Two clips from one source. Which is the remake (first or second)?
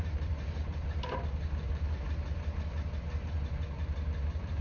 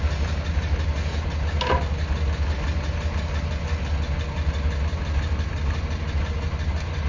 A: first